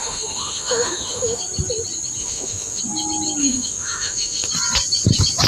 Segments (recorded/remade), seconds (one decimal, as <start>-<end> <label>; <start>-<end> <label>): 0.0-1.4 remade; 1.4-2.2 recorded; 2.2-2.8 remade; 2.8-3.4 recorded; 3.4-4.5 remade; 4.5-5.5 recorded